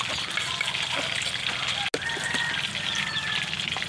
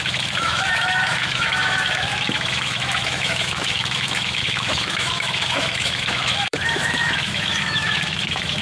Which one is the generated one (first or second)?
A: second